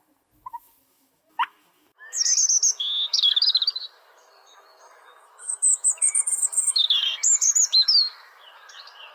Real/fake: fake